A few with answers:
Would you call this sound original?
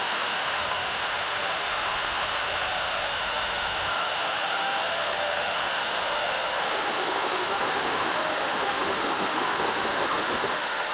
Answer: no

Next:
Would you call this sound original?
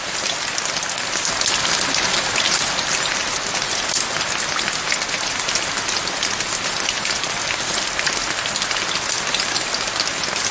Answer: yes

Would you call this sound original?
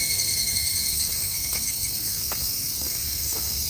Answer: no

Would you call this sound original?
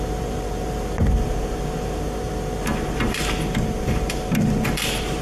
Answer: no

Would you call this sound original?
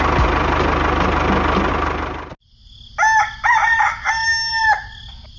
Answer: yes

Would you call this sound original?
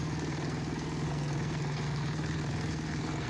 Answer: no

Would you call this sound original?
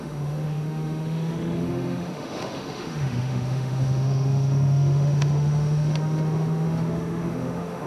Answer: no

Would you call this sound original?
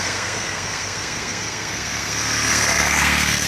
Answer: no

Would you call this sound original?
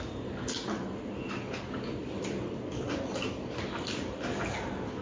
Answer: yes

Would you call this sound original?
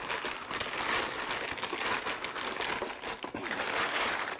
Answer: yes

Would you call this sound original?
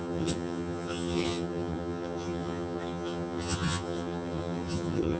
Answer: no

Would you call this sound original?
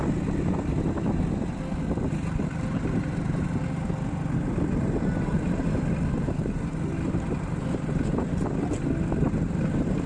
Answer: yes